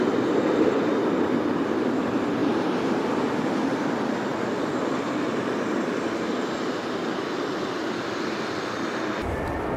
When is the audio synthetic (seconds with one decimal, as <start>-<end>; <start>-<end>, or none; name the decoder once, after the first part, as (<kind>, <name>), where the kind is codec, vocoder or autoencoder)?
2.4-3.1 (vocoder, BigVGAN v2)